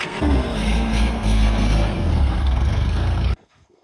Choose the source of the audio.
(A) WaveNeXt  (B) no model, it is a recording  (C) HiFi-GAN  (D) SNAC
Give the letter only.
D